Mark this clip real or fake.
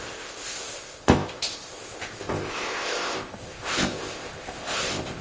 fake